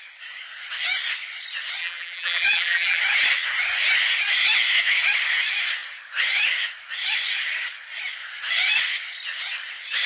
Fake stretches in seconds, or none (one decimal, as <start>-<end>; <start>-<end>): 1.8-3.0